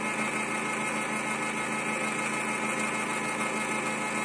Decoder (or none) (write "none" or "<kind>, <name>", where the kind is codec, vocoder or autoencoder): none